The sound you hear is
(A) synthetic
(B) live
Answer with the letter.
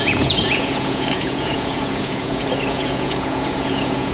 A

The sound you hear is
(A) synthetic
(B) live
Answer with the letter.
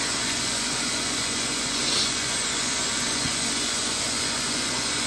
A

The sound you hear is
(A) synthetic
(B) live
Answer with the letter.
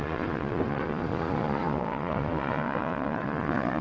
A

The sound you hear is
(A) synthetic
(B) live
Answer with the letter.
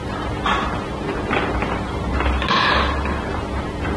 B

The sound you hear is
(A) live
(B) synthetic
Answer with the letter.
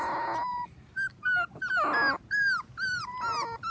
A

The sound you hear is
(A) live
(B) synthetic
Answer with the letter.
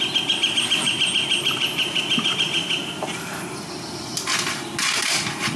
A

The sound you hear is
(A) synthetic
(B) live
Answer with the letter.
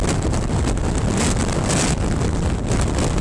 B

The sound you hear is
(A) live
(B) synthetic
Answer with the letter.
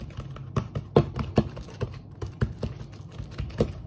A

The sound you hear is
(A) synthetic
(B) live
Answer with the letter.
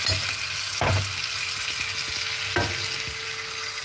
B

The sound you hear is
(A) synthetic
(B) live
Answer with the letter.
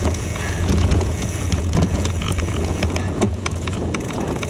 A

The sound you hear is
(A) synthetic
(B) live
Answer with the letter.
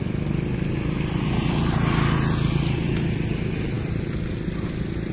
B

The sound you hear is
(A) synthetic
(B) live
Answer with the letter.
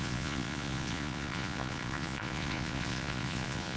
A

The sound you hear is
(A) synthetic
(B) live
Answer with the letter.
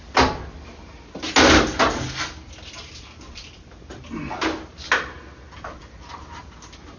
B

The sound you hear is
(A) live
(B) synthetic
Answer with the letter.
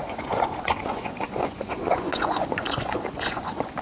B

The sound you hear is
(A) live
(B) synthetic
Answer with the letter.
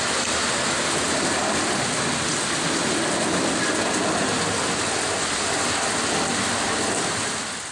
A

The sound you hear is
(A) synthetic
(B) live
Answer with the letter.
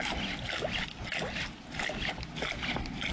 B